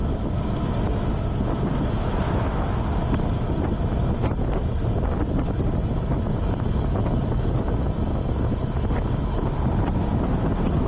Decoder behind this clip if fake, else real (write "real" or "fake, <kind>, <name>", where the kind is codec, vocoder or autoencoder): real